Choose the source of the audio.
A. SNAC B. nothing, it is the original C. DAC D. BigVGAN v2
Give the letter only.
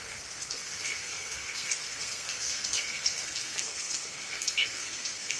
A